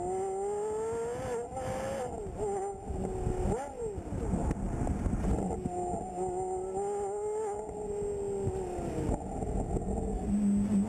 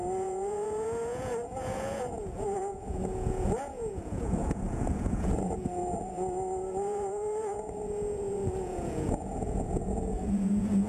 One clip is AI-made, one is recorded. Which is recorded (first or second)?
first